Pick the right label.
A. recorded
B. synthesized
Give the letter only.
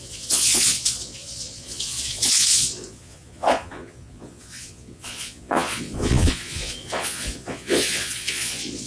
B